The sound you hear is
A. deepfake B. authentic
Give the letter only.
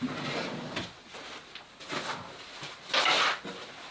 B